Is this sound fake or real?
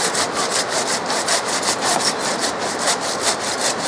real